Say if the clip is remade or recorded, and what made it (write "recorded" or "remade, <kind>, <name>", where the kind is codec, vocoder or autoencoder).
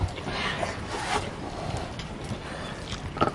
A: recorded